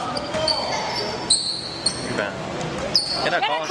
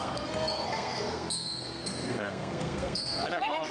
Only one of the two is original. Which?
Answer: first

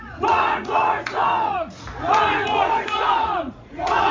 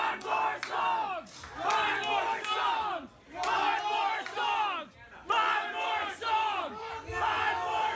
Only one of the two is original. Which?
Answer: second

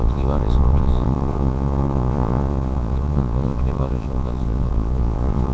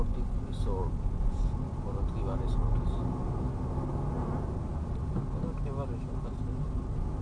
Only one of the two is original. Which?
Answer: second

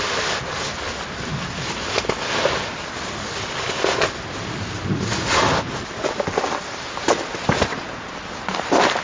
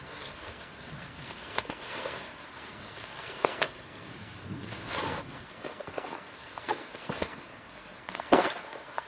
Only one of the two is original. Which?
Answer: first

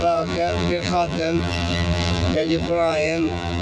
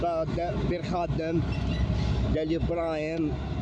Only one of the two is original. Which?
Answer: second